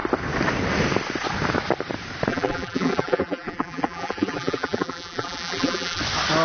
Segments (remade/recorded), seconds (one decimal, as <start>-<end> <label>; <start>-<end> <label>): 0.0-2.3 recorded; 2.3-6.0 remade; 6.0-6.4 recorded